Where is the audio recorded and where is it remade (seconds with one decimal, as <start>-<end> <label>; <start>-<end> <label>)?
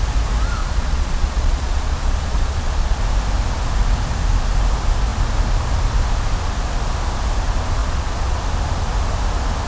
0.0-0.6 recorded; 0.6-3.0 remade; 3.0-7.8 recorded; 7.8-8.4 remade; 8.4-9.7 recorded